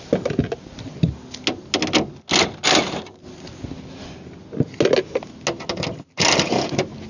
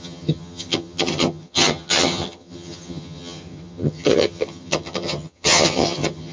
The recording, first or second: first